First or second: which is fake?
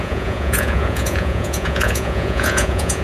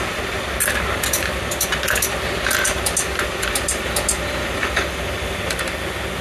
first